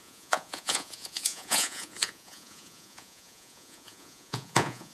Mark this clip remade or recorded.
remade